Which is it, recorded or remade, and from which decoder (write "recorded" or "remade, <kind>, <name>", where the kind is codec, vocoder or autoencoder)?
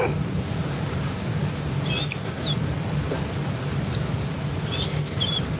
recorded